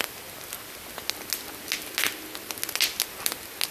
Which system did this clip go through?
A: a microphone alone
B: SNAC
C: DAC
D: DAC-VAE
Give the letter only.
A